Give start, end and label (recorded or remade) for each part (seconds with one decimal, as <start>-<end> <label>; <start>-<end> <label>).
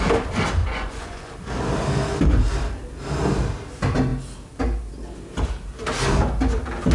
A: 0.0-0.6 recorded; 0.6-1.3 remade; 1.3-6.9 recorded